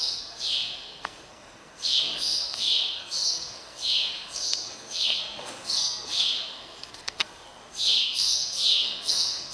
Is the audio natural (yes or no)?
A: no